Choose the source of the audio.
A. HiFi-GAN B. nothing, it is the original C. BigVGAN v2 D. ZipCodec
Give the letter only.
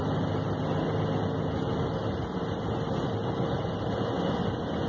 B